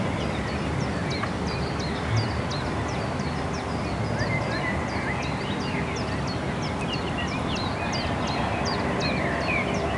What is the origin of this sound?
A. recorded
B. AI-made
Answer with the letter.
A